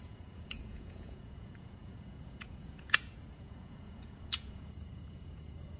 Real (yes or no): no